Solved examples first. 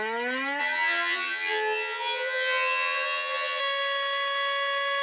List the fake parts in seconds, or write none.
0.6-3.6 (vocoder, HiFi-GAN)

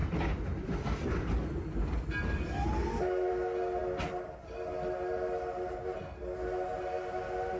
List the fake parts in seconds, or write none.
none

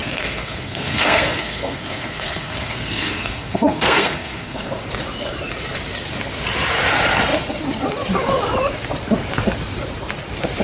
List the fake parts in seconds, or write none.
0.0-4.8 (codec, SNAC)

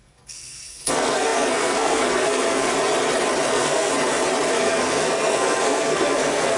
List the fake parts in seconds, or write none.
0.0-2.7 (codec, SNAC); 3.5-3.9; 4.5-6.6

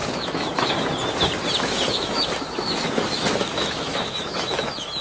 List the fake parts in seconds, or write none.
0.0-0.9 (autoencoder, DAC-VAE); 1.6-5.0